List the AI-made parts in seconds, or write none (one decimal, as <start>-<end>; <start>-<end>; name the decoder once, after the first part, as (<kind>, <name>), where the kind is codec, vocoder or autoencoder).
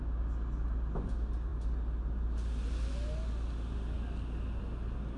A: none